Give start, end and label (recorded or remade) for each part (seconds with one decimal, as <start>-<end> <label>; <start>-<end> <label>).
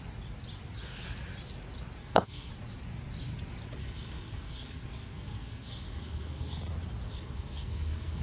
0.0-2.0 recorded; 2.0-2.5 remade; 2.5-3.8 recorded; 3.8-6.6 remade; 6.6-7.1 recorded; 7.1-8.2 remade